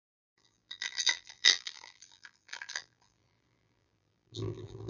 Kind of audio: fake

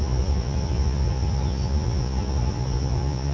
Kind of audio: fake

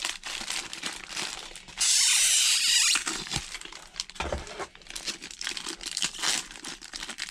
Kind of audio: fake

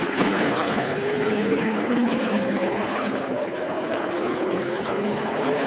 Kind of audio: fake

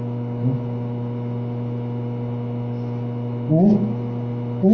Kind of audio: real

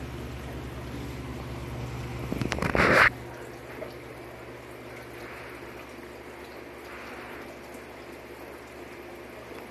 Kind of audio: fake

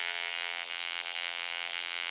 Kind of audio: fake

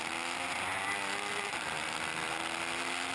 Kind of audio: real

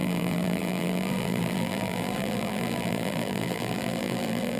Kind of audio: fake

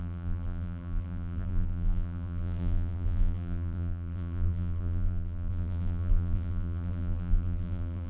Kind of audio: fake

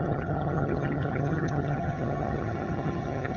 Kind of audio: fake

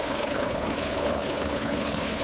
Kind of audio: fake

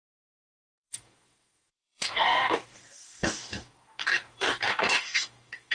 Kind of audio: fake